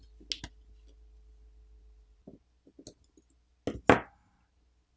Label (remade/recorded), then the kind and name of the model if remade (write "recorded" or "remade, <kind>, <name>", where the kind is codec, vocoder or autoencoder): recorded